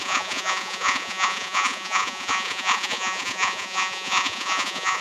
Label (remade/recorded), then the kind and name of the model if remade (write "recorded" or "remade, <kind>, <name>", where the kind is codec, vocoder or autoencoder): remade, vocoder, Vocos